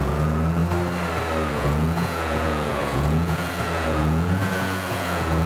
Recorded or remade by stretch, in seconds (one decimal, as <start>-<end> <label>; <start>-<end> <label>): 0.0-0.6 remade; 0.6-1.5 recorded; 1.5-5.5 remade